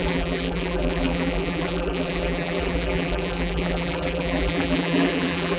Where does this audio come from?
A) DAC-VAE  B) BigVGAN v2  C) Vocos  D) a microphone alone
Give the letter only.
B